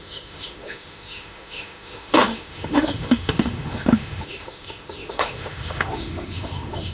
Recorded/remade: remade